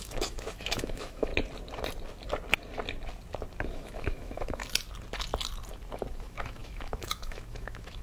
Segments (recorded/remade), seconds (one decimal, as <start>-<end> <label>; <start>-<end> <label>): 0.0-1.3 remade; 1.3-3.7 recorded; 3.7-4.6 remade; 4.6-6.1 recorded; 6.1-8.0 remade